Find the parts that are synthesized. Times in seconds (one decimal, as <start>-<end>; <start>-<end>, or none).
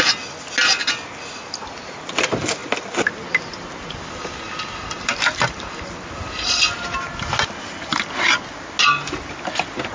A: none